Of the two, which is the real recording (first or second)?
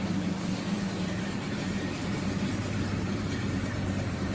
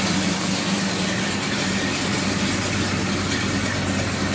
second